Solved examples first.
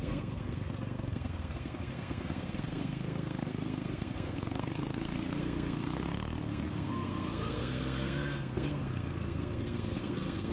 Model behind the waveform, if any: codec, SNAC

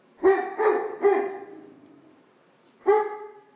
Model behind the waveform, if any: none